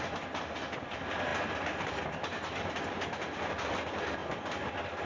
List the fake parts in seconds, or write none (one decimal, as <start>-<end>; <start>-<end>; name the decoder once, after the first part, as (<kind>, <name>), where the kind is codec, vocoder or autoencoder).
none